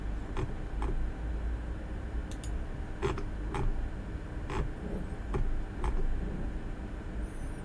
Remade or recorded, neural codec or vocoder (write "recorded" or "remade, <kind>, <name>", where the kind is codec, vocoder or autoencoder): recorded